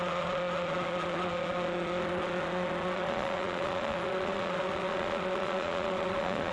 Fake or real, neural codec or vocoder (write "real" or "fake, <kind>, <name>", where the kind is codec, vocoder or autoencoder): fake, vocoder, Vocos